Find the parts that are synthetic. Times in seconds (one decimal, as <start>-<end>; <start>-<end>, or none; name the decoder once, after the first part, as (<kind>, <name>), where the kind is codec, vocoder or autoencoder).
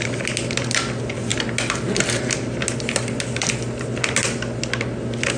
none